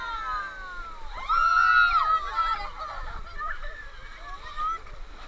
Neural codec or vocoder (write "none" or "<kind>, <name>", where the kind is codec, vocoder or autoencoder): none